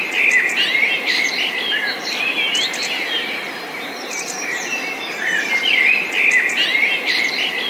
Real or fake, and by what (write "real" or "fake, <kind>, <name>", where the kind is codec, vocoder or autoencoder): real